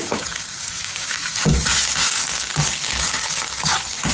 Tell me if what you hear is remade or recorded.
remade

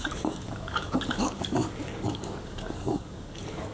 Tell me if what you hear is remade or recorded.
remade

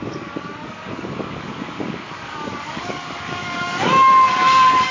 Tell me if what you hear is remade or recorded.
remade